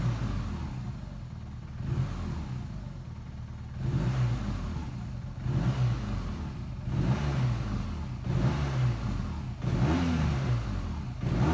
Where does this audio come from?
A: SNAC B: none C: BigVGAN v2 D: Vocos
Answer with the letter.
B